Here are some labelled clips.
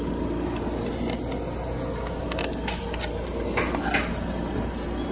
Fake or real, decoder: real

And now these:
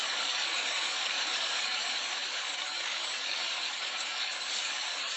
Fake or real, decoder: fake, codec, DAC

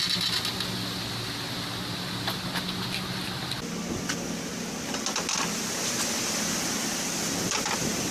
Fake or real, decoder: real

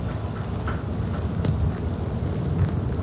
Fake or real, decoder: real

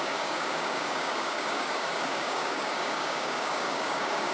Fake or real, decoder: fake, codec, DAC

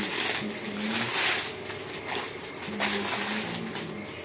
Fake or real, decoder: real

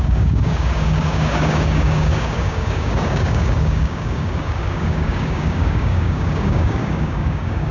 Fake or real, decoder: fake, codec, DAC